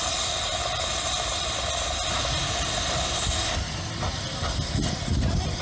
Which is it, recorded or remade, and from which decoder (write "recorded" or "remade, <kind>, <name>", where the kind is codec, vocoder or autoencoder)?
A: recorded